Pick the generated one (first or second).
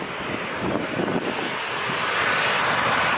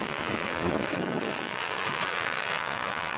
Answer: second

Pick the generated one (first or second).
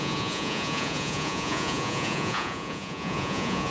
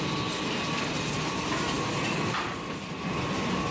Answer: first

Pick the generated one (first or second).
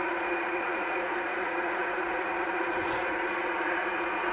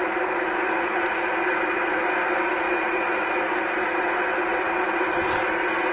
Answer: first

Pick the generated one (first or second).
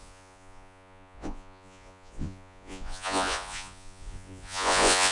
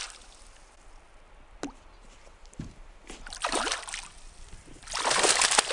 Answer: first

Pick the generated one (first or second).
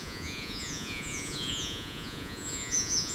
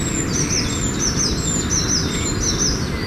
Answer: first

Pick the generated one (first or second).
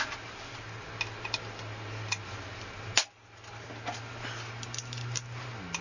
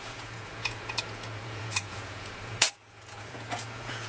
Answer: second